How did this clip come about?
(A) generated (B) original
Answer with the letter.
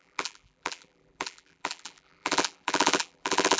A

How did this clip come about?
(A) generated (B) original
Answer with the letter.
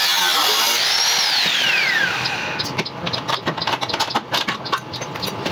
B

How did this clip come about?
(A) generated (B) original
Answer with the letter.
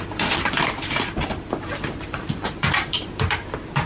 A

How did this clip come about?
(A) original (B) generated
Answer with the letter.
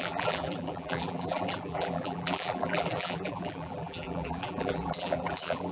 B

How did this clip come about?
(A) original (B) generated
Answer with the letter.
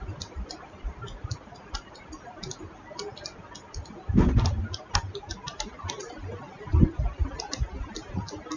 B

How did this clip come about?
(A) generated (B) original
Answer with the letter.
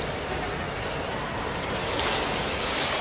B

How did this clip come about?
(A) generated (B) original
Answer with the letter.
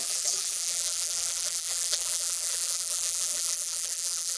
A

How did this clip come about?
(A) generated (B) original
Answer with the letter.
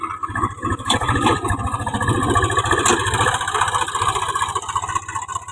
B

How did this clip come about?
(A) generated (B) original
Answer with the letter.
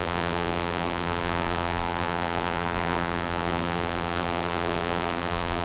A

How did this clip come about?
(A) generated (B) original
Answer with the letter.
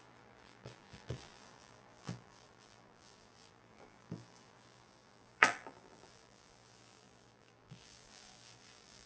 A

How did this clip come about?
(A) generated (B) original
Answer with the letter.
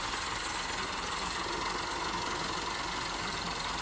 A